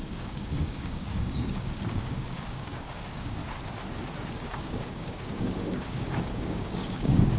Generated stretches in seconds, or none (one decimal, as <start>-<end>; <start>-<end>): 0.0-3.4; 4.4-7.4